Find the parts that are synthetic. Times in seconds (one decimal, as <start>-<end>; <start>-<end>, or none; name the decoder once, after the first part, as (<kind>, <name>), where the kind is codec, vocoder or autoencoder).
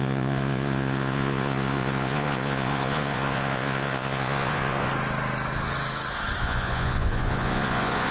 0.0-4.9 (vocoder, Vocos); 6.4-8.1